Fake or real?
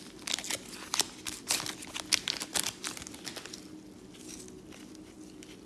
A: real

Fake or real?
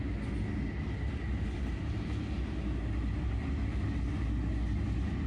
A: real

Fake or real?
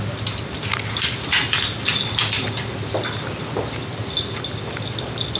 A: real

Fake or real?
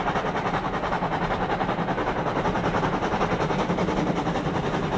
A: real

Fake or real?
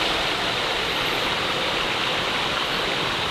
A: real